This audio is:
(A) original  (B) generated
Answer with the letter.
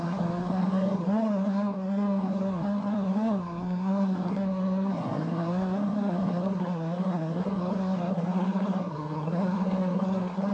B